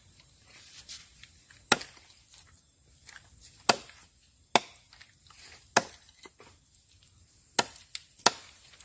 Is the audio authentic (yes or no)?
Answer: yes